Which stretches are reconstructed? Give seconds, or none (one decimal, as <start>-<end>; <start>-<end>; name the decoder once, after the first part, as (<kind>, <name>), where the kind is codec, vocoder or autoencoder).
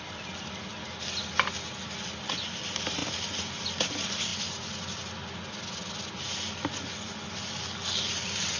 none